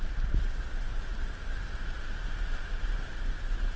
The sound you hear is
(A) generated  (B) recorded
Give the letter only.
B